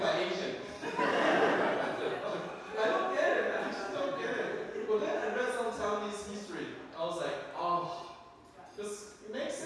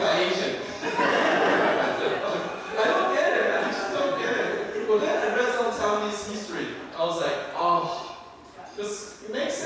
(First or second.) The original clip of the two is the first